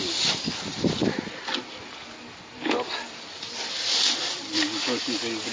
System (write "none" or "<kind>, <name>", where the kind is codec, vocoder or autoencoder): none